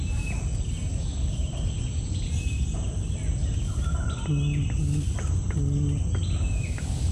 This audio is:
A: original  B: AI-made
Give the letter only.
A